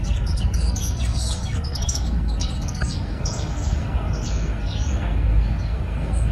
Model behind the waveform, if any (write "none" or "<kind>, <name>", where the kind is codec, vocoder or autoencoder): codec, SNAC